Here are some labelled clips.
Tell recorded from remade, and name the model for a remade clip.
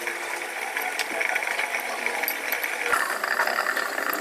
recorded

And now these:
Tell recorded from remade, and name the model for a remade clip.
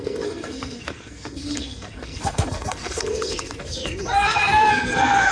remade, codec, SNAC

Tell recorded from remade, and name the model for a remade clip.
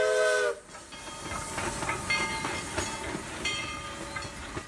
recorded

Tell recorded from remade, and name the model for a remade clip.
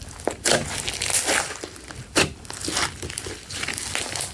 recorded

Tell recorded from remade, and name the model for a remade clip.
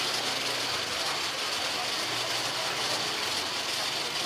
recorded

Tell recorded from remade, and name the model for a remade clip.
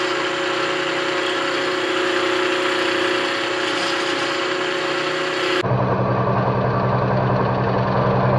recorded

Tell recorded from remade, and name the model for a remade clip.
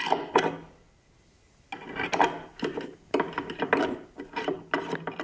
recorded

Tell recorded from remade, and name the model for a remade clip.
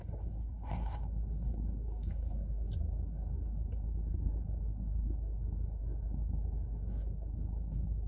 remade, codec, SNAC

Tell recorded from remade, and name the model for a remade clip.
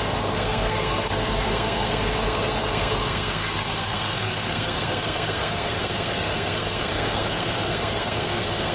remade, codec, SNAC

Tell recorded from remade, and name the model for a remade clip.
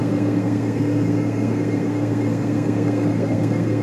remade, codec, SNAC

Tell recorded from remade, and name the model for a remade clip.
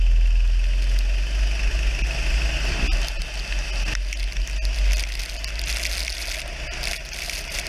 recorded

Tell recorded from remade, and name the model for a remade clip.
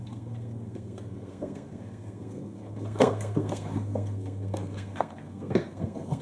remade, codec, SNAC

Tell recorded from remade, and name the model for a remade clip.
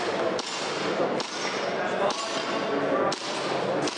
recorded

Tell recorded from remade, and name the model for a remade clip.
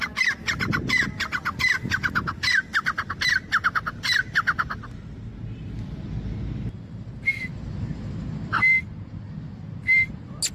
recorded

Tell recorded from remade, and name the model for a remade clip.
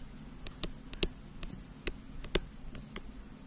recorded